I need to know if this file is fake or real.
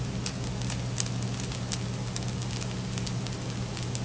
real